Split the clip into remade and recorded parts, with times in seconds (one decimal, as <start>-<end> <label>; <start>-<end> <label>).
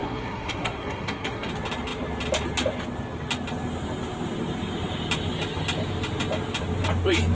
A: 0.0-1.5 remade; 1.5-7.3 recorded